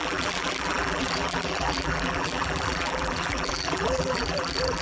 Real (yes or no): no